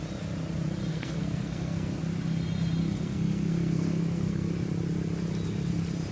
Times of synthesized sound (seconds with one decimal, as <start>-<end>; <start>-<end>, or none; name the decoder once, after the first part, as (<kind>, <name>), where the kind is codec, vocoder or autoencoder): 0.9-2.0 (codec, SNAC); 2.8-4.5